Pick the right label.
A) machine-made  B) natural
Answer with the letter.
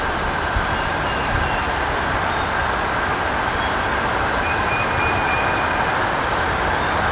B